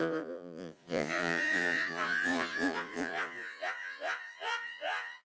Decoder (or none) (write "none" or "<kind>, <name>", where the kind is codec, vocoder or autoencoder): vocoder, Vocos